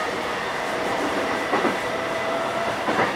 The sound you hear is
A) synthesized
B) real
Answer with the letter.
A